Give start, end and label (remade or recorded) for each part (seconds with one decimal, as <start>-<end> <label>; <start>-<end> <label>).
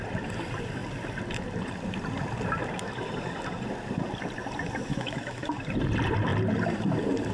0.0-4.9 recorded; 4.9-5.5 remade; 5.5-7.3 recorded